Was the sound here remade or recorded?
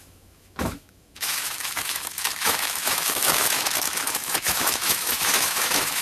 remade